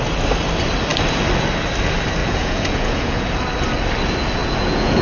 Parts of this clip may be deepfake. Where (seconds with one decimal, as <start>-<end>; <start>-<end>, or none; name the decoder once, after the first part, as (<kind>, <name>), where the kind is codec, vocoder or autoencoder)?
2.2-3.2 (vocoder, Vocos); 4.4-5.0